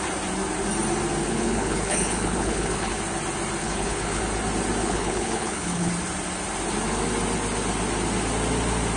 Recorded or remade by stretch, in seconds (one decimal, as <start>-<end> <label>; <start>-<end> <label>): 0.0-1.2 recorded; 1.2-2.9 remade; 2.9-3.6 recorded; 3.6-4.2 remade; 4.2-4.8 recorded; 4.8-5.9 remade; 5.9-9.0 recorded